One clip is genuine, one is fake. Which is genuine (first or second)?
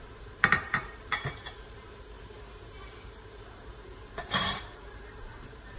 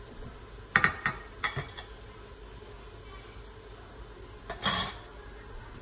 second